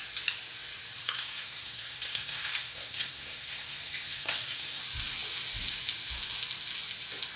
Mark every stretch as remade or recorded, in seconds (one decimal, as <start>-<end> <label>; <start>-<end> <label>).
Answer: 0.0-1.0 recorded; 1.0-4.8 remade; 4.8-7.4 recorded